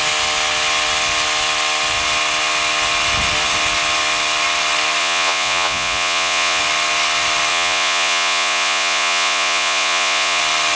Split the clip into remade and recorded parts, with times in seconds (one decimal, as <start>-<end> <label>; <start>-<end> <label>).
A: 0.0-5.0 recorded; 5.0-6.6 remade; 6.6-7.5 recorded; 7.5-10.4 remade; 10.4-10.8 recorded